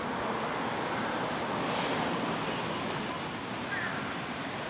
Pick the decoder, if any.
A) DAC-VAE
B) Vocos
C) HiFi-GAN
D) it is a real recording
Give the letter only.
D